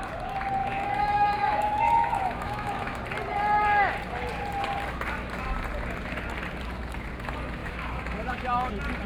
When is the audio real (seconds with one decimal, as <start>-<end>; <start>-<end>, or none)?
0.0-0.6; 3.0-7.6; 8.7-9.1